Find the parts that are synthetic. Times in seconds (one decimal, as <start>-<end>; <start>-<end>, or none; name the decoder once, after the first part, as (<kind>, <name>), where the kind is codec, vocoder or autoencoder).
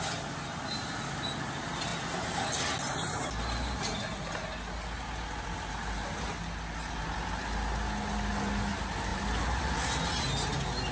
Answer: 9.1-9.7 (vocoder, BigVGAN v2)